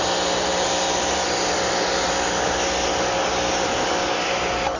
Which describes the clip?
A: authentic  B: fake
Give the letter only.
A